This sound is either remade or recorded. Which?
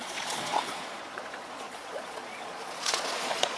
remade